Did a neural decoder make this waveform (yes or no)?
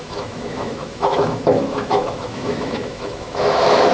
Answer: yes